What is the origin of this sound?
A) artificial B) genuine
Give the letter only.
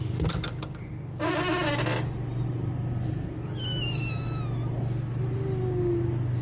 B